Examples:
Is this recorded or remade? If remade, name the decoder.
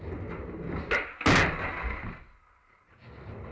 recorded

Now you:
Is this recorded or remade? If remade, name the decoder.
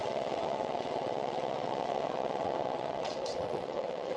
remade, vocoder, WaveNeXt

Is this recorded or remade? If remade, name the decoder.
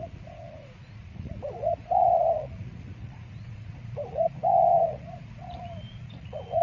remade, vocoder, Vocos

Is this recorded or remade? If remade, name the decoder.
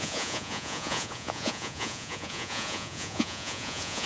remade, vocoder, Vocos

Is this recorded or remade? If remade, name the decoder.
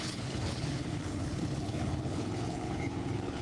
remade, codec, HILCodec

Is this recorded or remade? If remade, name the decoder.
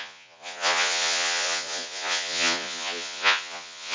remade, vocoder, Vocos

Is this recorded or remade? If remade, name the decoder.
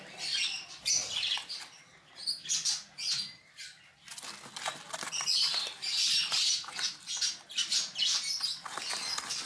recorded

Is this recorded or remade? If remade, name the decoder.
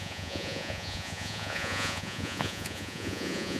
remade, vocoder, Vocos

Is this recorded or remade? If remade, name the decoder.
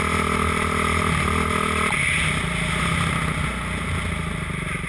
recorded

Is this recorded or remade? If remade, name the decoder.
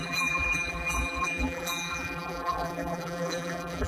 remade, vocoder, BigVGAN v2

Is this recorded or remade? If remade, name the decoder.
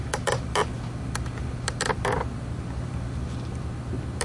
recorded